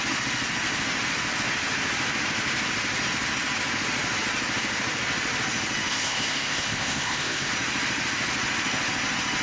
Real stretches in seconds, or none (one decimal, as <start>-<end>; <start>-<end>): 0.0-5.9; 7.5-9.4